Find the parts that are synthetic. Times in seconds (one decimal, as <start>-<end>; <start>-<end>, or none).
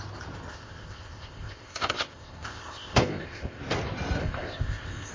0.5-3.6; 4.2-5.1